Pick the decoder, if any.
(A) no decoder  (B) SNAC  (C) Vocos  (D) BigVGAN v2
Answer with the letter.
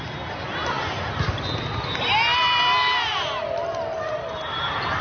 A